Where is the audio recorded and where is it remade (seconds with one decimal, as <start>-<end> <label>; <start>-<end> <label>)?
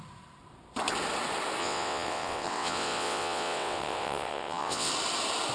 0.0-1.6 recorded; 1.6-4.9 remade; 4.9-5.5 recorded